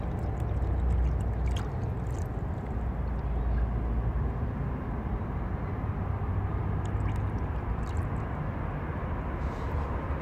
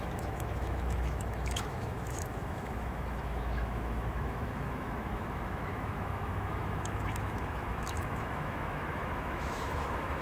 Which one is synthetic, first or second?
second